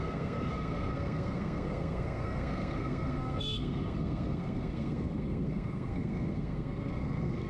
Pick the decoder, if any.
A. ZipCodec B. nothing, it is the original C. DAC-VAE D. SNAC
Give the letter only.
D